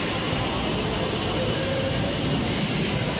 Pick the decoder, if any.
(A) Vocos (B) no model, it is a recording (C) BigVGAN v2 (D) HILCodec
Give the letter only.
B